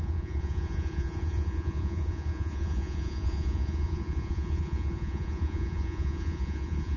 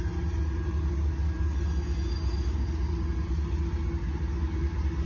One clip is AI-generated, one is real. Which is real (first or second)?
second